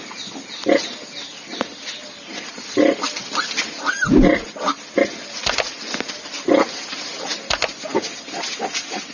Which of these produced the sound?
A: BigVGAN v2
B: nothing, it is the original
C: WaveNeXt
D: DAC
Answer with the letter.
B